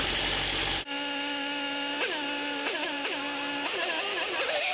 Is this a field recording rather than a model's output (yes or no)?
yes